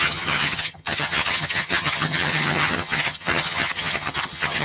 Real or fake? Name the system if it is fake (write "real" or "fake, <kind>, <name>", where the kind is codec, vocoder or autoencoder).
fake, vocoder, HiFi-GAN